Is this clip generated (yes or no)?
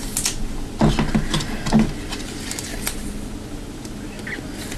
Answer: no